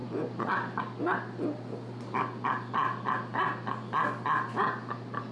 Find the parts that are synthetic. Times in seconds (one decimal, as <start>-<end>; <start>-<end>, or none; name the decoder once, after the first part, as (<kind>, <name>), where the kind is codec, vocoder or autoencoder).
0.0-0.8 (vocoder, BigVGAN v2)